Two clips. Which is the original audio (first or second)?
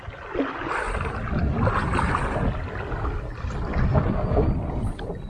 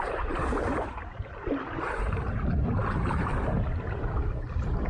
first